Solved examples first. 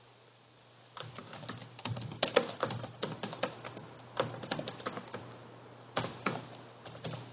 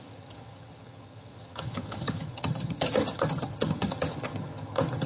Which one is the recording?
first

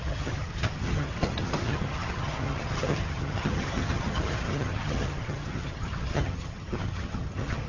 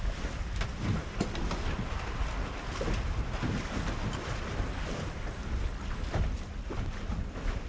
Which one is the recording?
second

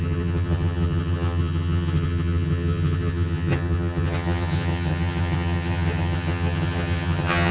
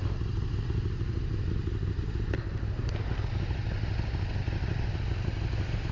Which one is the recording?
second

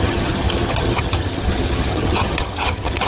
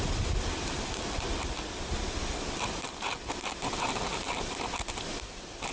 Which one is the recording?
second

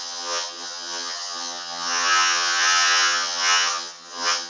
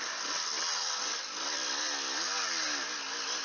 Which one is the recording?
second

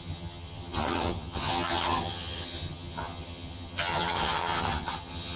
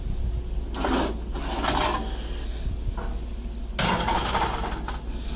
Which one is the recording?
second